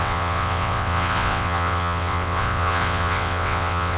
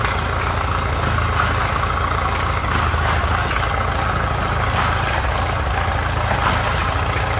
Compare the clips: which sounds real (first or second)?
second